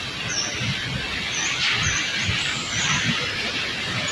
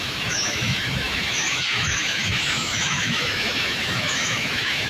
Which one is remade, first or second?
second